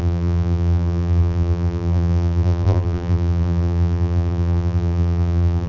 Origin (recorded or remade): remade